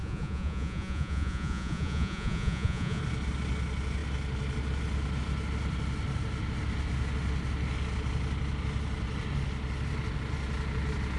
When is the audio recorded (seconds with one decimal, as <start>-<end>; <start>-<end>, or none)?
3.0-11.2